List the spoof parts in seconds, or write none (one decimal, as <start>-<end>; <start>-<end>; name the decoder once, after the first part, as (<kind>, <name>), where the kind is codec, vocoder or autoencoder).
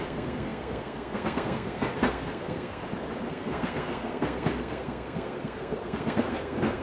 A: 0.0-2.8 (codec, SNAC); 3.3-6.8